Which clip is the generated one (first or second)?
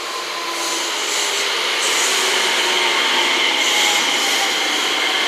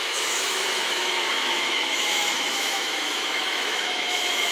second